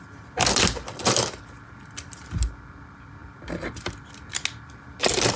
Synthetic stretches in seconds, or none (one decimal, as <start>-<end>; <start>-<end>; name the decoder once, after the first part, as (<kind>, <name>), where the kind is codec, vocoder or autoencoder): none